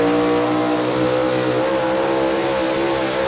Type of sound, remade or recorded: recorded